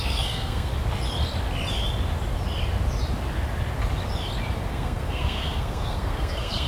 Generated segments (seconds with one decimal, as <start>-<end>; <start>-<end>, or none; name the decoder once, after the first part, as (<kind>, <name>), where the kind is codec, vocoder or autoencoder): 0.0-0.7 (codec, SNAC); 4.7-6.7